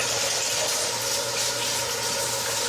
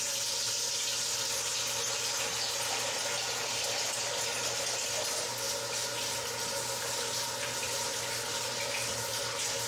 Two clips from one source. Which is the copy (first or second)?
first